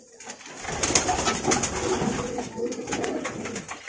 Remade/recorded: recorded